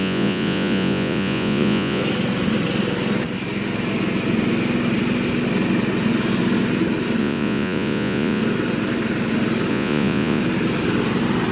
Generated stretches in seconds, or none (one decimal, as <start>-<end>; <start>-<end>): 0.0-2.0; 7.2-8.4; 9.7-10.4